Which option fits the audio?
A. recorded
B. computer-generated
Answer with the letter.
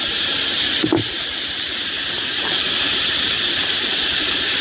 B